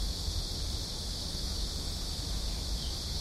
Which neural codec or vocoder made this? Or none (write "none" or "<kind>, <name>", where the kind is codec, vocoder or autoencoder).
autoencoder, DAC-VAE